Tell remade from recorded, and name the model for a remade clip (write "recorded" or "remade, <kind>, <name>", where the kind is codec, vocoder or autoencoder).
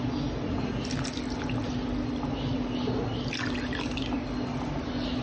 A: recorded